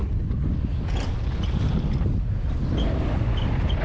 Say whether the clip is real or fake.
real